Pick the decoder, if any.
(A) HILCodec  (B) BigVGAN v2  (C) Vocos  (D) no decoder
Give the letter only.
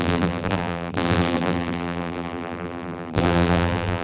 B